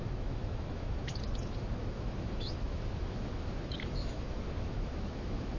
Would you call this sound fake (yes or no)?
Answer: yes